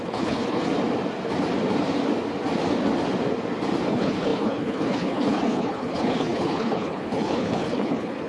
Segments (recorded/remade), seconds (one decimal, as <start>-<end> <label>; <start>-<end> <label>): 0.0-0.7 remade; 0.7-3.9 recorded; 3.9-8.3 remade

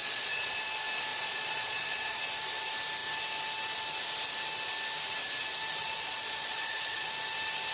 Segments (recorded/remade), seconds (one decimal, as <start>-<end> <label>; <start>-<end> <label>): 0.0-0.6 remade; 0.6-1.1 recorded; 1.1-2.2 remade; 2.2-5.8 recorded; 5.8-7.1 remade; 7.1-7.7 recorded

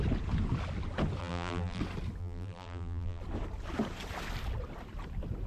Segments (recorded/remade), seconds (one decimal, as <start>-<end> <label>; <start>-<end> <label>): 0.0-1.2 recorded; 1.2-1.8 remade; 1.8-2.2 recorded; 2.2-3.2 remade; 3.2-5.5 recorded